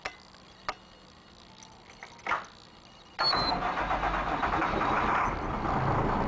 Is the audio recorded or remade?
recorded